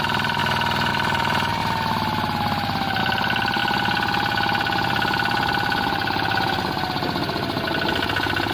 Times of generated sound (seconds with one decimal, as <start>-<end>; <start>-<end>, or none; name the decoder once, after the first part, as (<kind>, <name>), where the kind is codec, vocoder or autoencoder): 0.0-0.4 (vocoder, BigVGAN v2); 0.9-1.6; 3.0-3.6